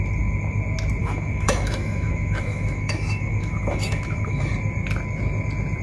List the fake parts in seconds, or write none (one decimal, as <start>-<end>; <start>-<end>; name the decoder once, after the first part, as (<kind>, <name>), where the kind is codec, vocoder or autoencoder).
1.0-4.5 (autoencoder, DAC-VAE)